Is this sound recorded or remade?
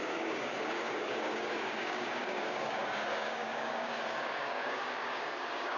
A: remade